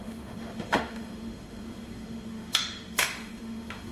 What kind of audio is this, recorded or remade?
remade